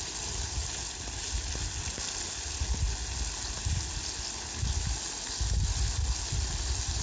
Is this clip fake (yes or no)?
no